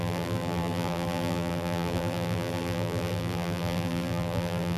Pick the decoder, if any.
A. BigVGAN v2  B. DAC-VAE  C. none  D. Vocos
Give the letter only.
A